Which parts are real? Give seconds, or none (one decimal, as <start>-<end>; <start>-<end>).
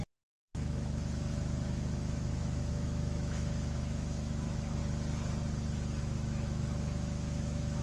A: 4.8-6.0